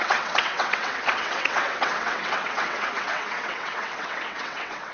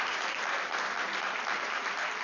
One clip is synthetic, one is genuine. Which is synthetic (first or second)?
first